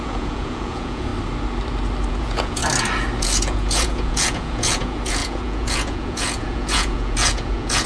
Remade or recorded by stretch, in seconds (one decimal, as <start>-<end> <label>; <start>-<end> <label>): 0.0-1.1 remade; 1.1-2.1 recorded; 2.1-2.6 remade; 2.6-3.2 recorded; 3.2-7.9 remade